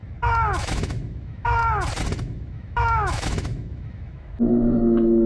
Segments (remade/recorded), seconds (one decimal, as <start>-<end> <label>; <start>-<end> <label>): 0.0-0.6 recorded; 0.6-1.6 remade; 1.6-2.2 recorded; 2.2-5.3 remade